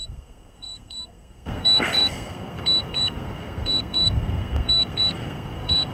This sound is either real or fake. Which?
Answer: fake